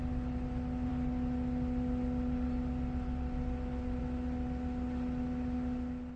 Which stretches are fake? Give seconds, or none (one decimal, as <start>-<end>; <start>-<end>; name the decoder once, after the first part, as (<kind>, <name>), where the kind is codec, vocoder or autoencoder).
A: none